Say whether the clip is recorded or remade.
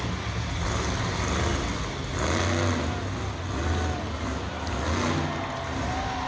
recorded